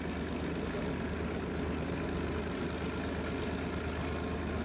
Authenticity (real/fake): real